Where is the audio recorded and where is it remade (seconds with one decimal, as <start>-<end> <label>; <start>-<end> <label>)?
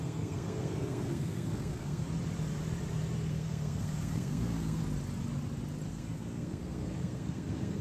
0.0-2.0 remade; 2.0-3.3 recorded; 3.3-4.8 remade; 4.8-5.9 recorded; 5.9-7.8 remade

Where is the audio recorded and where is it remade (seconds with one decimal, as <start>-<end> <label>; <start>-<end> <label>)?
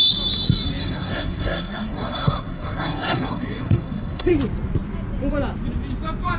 0.0-0.8 recorded; 0.8-4.3 remade; 4.3-6.4 recorded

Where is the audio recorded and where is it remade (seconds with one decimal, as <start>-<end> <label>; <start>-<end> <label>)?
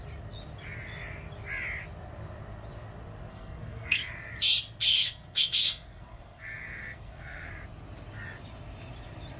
0.0-3.3 recorded; 3.3-4.3 remade; 4.3-4.9 recorded; 4.9-7.5 remade; 7.5-9.4 recorded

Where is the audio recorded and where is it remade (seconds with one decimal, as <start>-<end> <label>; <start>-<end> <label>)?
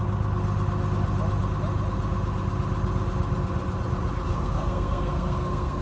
0.0-4.3 recorded; 4.3-5.8 remade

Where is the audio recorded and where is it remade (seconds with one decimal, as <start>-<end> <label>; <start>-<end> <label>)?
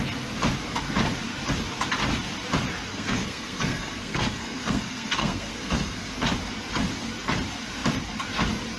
0.0-2.9 recorded; 2.9-6.1 remade; 6.1-8.8 recorded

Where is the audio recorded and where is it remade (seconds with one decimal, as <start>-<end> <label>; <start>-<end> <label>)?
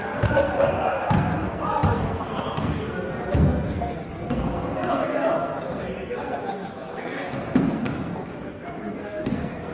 0.0-9.7 remade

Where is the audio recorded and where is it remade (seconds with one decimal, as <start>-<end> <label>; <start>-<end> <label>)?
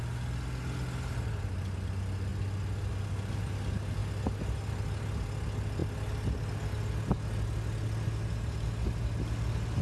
0.0-9.8 recorded